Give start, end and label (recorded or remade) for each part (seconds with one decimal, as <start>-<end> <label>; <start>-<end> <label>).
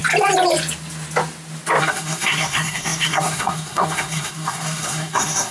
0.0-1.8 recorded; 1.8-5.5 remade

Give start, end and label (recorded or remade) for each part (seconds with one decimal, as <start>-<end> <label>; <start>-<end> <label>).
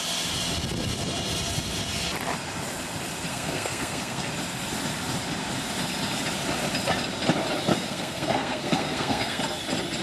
0.0-3.3 recorded; 3.3-4.3 remade; 4.3-7.7 recorded; 7.7-9.4 remade; 9.4-10.0 recorded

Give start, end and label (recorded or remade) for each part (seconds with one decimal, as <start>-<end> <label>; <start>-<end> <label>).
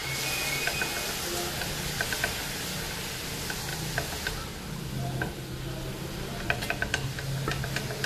0.0-8.1 recorded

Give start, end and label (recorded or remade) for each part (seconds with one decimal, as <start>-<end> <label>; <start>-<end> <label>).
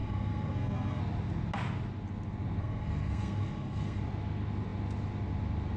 0.0-1.0 remade; 1.0-2.6 recorded; 2.6-4.0 remade; 4.0-5.8 recorded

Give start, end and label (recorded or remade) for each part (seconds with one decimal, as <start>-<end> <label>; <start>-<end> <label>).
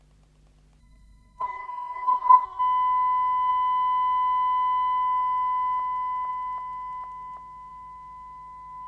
0.0-0.8 recorded; 0.8-2.6 remade; 2.6-8.9 recorded